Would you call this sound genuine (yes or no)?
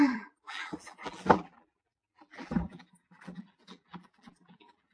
no